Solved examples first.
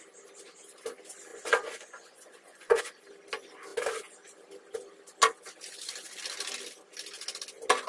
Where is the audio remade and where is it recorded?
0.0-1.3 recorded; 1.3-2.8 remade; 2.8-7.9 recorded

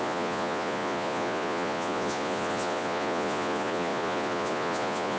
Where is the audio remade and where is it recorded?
0.0-5.2 remade

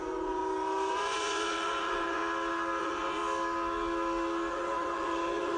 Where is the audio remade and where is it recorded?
0.0-0.4 remade; 0.4-0.9 recorded; 0.9-2.2 remade; 2.2-2.8 recorded; 2.8-3.2 remade; 3.2-4.5 recorded; 4.5-5.6 remade

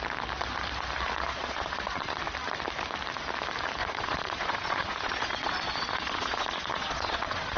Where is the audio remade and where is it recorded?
0.0-1.3 recorded; 1.3-2.2 remade; 2.2-3.8 recorded; 3.8-7.6 remade

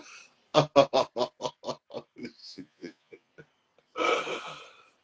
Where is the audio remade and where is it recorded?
0.0-2.4 recorded; 2.4-3.3 remade; 3.3-5.0 recorded

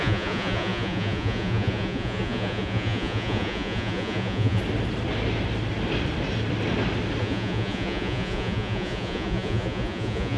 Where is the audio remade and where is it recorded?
0.0-4.6 remade; 4.6-7.2 recorded; 7.2-10.4 remade